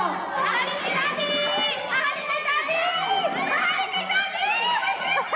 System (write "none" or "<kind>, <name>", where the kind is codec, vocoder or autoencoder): none